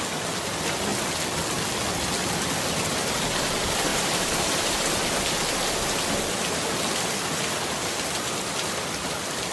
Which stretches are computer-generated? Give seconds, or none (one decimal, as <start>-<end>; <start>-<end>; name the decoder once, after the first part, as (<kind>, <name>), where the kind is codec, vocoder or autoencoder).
3.9-4.8 (vocoder, BigVGAN v2)